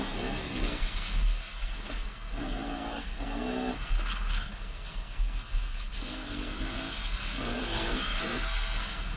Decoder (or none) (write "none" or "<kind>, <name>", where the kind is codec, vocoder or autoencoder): codec, SNAC